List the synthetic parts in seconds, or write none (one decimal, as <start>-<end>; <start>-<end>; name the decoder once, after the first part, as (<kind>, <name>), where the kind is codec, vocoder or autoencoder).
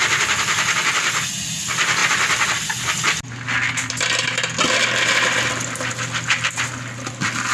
none